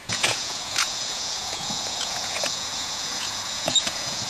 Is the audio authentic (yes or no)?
no